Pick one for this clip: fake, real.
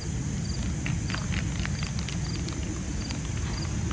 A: real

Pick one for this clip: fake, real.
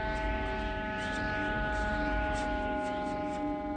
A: real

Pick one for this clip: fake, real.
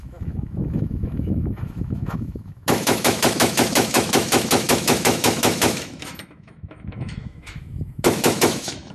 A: fake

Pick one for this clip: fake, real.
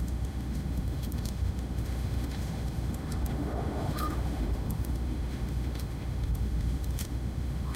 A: fake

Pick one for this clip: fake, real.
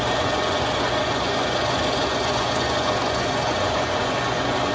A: fake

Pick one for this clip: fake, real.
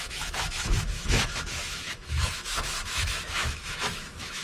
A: fake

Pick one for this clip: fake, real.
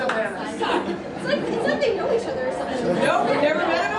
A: real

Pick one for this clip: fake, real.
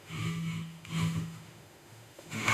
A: fake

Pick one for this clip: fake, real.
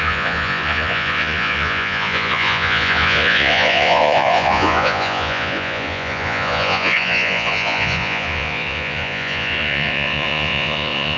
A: fake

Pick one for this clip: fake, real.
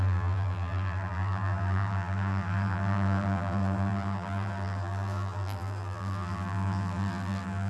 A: fake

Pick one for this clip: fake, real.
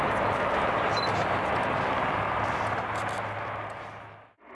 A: real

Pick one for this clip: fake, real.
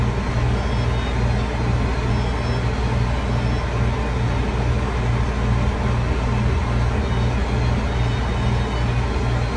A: real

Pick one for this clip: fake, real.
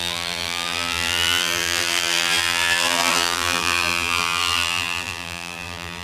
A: fake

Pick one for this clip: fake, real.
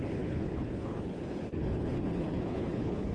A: fake